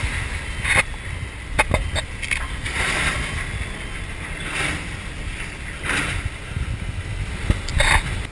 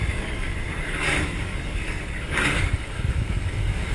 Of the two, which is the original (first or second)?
first